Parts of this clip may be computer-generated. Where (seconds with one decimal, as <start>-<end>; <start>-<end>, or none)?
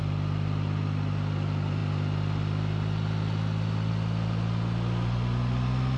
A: none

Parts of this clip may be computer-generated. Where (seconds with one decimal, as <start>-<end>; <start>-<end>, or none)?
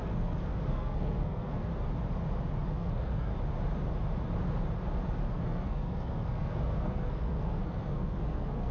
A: 0.0-1.7; 2.7-3.3; 5.3-8.7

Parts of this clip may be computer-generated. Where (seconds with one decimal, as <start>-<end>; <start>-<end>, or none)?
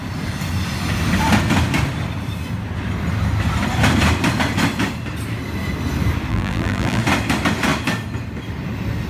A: 6.3-7.0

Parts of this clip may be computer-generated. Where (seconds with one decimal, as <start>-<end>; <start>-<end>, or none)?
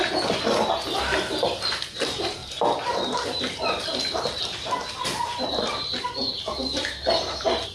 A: none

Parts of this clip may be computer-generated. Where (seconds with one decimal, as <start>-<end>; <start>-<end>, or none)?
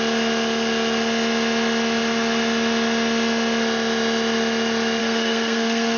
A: 5.0-6.0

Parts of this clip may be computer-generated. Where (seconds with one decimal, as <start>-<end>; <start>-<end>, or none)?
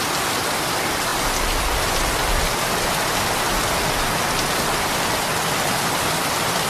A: none